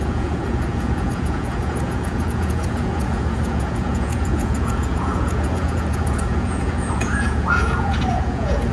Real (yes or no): no